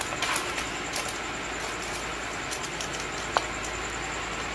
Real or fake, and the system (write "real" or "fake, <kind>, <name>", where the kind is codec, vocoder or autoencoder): real